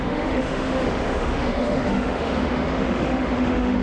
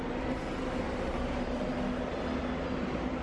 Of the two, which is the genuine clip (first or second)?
second